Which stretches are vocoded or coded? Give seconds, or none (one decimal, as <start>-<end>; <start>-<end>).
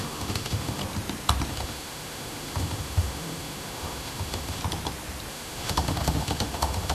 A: 0.0-0.8; 1.5-4.6; 5.3-6.9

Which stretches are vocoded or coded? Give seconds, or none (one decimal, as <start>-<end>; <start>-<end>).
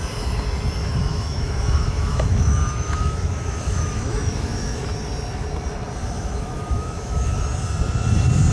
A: 0.8-4.8; 6.0-7.4